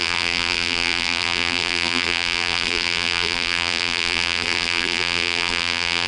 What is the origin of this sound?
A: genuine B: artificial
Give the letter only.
B